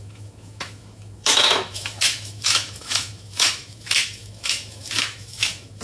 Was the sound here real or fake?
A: fake